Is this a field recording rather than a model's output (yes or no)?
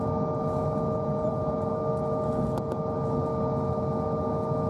yes